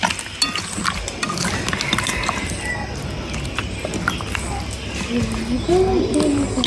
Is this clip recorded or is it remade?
recorded